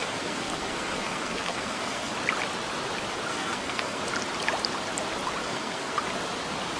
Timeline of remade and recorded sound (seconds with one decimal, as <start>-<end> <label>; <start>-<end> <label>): 0.0-2.1 remade; 2.1-3.3 recorded; 3.3-4.0 remade; 4.0-5.4 recorded; 5.4-6.0 remade; 6.0-6.8 recorded